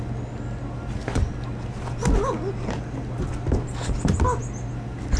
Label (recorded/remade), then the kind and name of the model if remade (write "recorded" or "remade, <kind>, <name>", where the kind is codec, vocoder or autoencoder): recorded